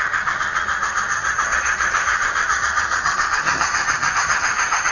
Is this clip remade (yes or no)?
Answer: yes